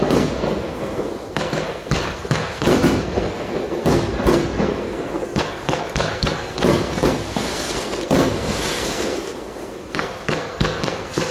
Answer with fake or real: fake